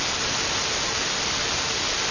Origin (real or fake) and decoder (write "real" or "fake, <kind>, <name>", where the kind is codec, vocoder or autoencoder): real